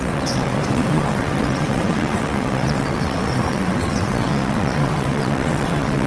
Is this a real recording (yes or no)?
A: no